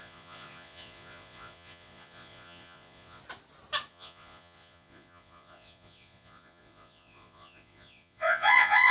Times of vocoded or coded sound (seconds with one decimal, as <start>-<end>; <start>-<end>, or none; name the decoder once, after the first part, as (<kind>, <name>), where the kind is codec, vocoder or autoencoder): 0.0-3.2 (vocoder, Vocos); 3.9-8.9